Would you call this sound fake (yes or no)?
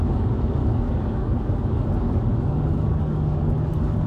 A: yes